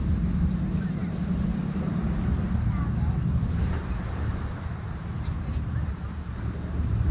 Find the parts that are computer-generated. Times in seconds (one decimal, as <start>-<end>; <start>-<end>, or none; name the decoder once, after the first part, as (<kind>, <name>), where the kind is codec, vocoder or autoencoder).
0.0-2.0 (vocoder, BigVGAN v2); 3.5-7.1